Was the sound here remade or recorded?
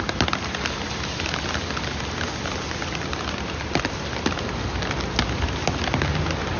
recorded